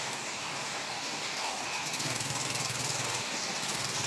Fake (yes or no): yes